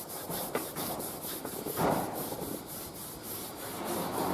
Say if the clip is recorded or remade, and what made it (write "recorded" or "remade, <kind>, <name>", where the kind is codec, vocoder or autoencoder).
remade, vocoder, BigVGAN v2